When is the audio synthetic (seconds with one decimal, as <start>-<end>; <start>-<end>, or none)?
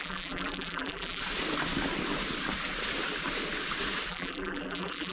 0.0-1.2; 4.1-5.1